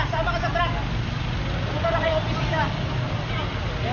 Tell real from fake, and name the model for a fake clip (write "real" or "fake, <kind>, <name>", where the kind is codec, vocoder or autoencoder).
real